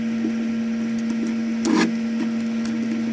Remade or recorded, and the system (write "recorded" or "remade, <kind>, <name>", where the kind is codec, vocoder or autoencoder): recorded